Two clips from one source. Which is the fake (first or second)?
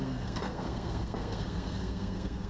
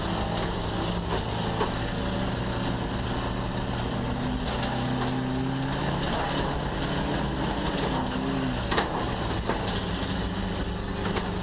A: first